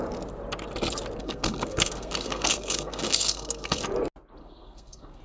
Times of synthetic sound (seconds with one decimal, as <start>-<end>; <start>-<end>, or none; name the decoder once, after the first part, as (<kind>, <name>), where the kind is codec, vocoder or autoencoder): 1.2-3.8 (codec, SNAC); 4.4-5.2